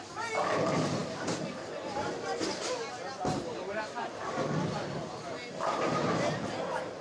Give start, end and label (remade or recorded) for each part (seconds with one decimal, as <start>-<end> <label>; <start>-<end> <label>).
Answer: 0.0-7.0 recorded